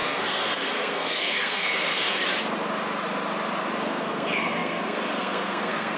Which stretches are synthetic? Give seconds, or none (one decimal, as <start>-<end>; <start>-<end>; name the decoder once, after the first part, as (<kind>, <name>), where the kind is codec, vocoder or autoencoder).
0.0-2.2 (codec, SNAC); 3.8-6.0